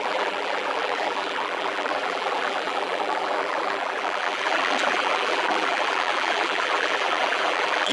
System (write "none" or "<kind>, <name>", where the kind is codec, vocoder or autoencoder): vocoder, BigVGAN v2